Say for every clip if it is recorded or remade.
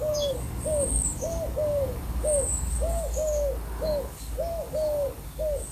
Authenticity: remade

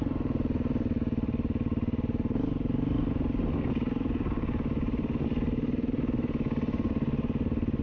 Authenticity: recorded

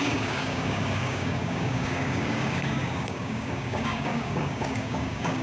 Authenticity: remade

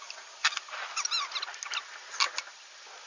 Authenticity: recorded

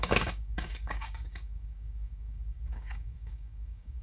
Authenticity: remade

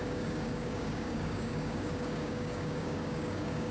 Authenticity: remade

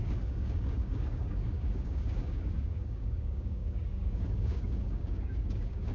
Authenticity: remade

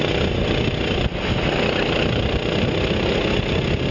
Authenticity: recorded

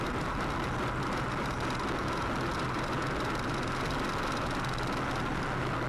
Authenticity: recorded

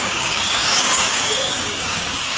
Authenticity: remade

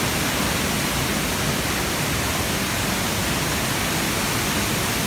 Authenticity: recorded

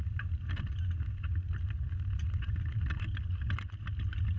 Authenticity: recorded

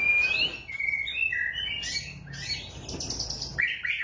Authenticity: recorded